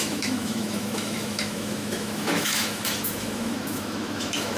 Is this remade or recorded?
remade